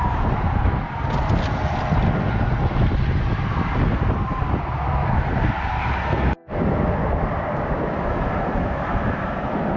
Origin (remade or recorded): recorded